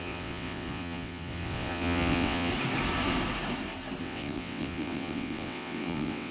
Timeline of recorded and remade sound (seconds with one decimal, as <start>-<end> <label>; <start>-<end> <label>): 0.0-2.5 remade; 2.5-4.0 recorded; 4.0-6.3 remade